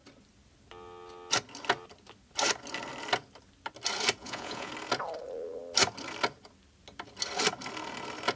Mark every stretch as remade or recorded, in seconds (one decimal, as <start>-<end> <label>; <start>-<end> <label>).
0.0-4.2 recorded; 4.2-4.7 remade; 4.7-8.4 recorded